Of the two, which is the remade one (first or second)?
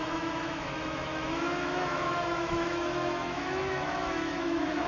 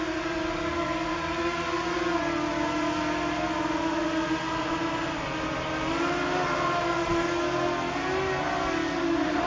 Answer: first